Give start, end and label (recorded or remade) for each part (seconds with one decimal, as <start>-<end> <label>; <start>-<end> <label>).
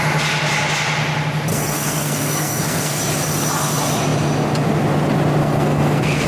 0.0-1.5 recorded; 1.5-3.0 remade; 3.0-5.4 recorded; 5.4-6.3 remade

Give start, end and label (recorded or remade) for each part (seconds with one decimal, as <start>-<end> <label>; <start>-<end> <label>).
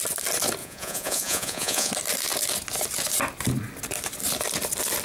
0.0-0.6 recorded; 0.6-1.9 remade; 1.9-5.0 recorded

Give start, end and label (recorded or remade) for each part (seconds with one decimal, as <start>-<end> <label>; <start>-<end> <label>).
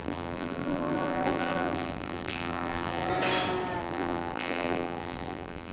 0.0-3.1 remade; 3.1-3.8 recorded; 3.8-5.7 remade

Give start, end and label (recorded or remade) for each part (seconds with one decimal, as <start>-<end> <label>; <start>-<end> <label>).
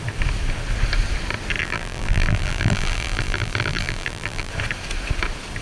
0.0-1.6 recorded; 1.6-4.5 remade; 4.5-5.6 recorded